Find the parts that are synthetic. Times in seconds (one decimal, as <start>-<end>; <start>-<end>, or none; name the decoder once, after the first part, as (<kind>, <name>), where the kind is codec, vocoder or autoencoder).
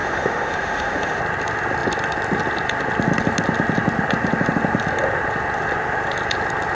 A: 0.0-1.2 (autoencoder, DAC-VAE)